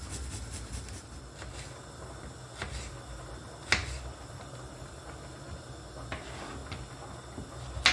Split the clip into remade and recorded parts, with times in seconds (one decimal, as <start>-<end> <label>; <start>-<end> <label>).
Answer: 0.0-7.9 recorded